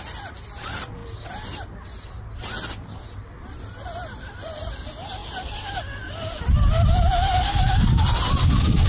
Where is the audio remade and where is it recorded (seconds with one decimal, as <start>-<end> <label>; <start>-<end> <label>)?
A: 0.0-8.9 recorded